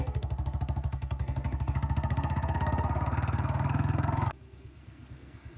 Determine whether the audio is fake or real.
fake